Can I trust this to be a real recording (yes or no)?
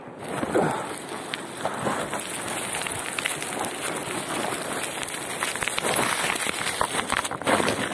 yes